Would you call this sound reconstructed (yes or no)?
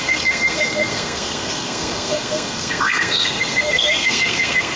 yes